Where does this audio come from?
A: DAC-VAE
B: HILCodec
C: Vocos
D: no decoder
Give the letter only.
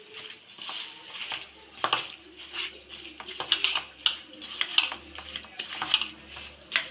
D